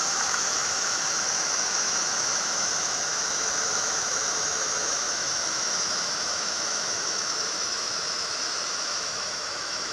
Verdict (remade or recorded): remade